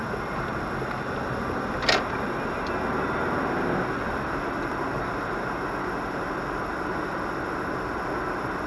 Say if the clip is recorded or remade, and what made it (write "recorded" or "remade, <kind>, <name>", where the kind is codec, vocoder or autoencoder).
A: recorded